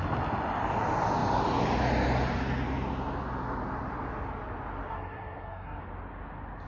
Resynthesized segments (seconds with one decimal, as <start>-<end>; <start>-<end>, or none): 4.9-5.8